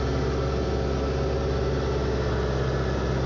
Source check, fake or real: real